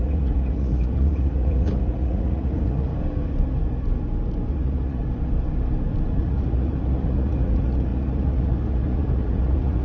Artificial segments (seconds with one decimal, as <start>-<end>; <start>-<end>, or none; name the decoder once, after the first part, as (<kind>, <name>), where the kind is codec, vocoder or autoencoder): 0.0-2.9 (vocoder, Vocos); 4.5-5.0; 6.2-9.8